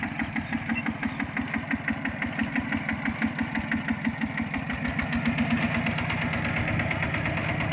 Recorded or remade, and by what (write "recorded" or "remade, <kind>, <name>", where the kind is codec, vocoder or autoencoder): recorded